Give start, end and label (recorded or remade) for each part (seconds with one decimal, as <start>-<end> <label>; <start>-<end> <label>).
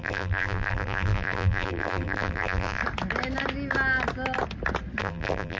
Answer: 0.0-2.8 remade; 2.8-5.0 recorded; 5.0-5.6 remade